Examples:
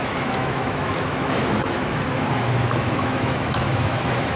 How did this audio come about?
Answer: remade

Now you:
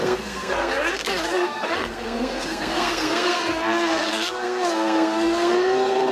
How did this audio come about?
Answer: remade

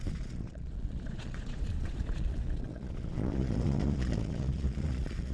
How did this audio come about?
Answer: remade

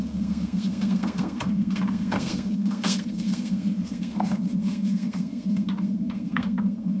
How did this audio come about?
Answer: remade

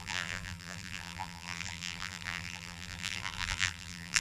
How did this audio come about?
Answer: remade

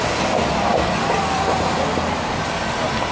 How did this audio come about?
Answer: recorded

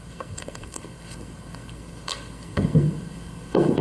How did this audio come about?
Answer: remade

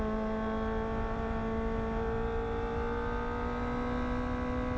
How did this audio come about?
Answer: recorded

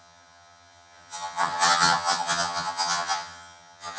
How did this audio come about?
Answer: remade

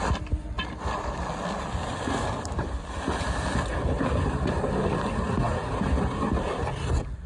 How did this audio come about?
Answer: recorded